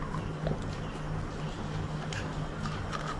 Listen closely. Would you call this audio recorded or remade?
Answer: recorded